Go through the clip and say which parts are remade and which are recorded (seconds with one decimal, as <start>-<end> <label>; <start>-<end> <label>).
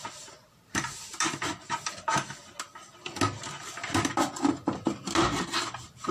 0.0-6.1 recorded